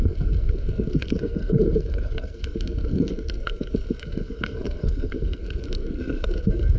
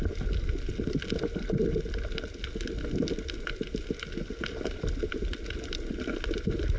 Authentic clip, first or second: second